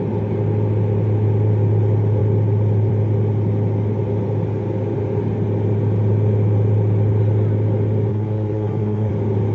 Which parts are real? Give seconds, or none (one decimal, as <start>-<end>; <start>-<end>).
0.0-8.1; 9.1-9.5